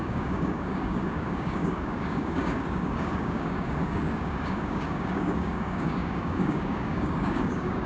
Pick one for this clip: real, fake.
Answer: fake